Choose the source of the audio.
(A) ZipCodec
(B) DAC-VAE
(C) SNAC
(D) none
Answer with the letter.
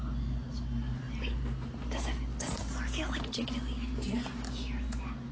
D